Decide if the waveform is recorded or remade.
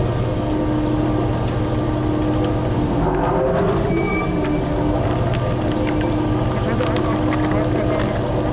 recorded